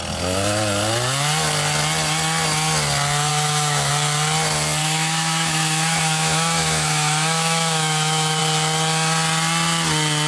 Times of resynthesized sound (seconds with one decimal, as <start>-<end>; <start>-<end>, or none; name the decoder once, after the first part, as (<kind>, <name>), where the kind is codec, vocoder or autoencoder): 3.3-3.9 (autoencoder, DAC-VAE); 4.8-8.4